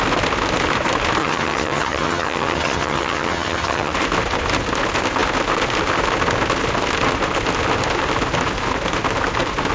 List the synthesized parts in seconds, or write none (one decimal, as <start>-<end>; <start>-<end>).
1.2-3.9

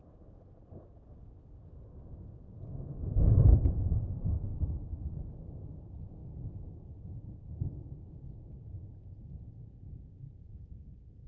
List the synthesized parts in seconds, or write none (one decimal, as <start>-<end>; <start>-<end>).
none

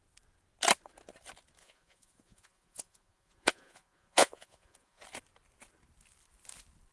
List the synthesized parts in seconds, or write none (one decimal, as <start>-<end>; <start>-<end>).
1.6-5.0